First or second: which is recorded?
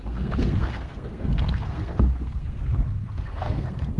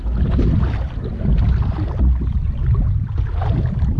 second